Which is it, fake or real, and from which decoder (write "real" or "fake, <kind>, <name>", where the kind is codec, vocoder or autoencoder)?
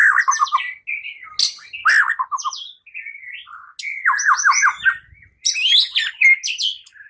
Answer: real